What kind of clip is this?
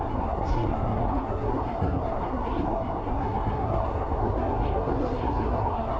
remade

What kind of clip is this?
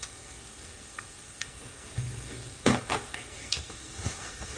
remade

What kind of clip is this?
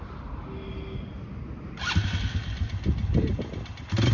recorded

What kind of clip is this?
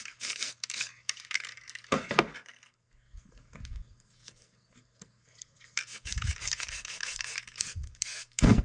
remade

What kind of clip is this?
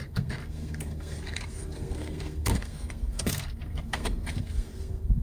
remade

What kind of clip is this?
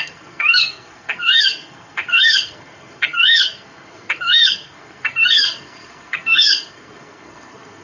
remade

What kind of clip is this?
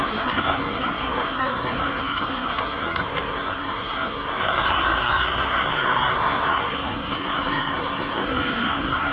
remade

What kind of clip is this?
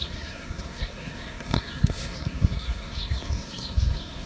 remade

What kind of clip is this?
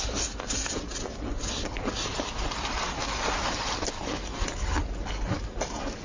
recorded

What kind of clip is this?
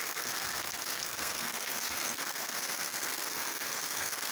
remade